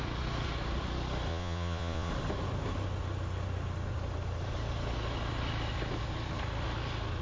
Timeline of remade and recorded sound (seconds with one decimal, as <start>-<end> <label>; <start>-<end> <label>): 0.0-1.3 recorded; 1.3-2.1 remade; 2.1-7.2 recorded